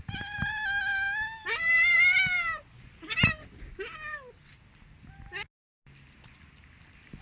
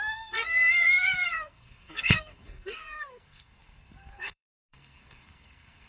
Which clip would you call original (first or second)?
first